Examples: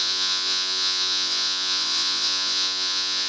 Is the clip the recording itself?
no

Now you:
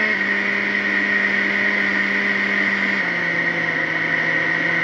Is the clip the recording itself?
yes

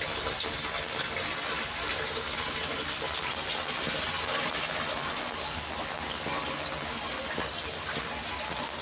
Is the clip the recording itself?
yes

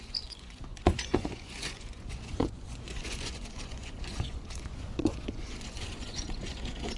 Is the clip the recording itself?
no